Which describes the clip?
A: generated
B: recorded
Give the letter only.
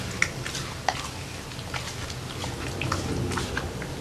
B